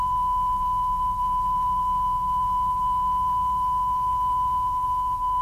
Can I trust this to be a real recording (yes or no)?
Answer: yes